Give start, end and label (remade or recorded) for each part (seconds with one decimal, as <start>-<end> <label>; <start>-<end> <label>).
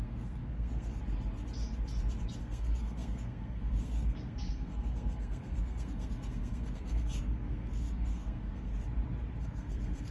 0.0-1.0 remade; 1.0-2.4 recorded; 2.4-8.7 remade; 8.7-9.4 recorded; 9.4-10.1 remade